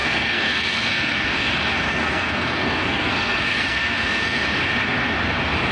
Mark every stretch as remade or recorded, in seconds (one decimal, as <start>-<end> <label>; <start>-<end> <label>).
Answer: 0.0-1.5 remade; 1.5-1.9 recorded; 1.9-4.4 remade; 4.4-5.7 recorded